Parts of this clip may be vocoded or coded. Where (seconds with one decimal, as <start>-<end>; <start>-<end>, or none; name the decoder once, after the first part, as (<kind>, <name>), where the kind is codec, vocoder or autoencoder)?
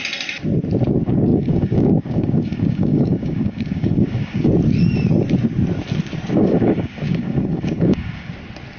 1.3-4.5 (codec, DAC); 6.3-8.3